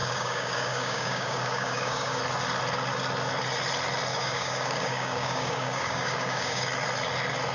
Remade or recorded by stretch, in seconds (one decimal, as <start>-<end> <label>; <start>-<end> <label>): 0.0-2.2 remade; 2.2-4.1 recorded; 4.1-6.7 remade; 6.7-7.5 recorded